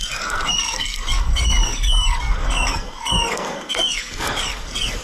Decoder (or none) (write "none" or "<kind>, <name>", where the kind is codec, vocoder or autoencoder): codec, SNAC